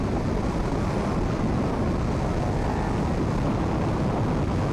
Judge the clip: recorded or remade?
recorded